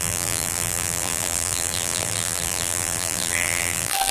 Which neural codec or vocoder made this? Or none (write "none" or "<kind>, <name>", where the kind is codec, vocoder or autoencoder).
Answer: vocoder, BigVGAN v2